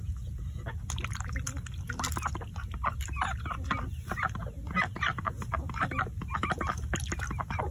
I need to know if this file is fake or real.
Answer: real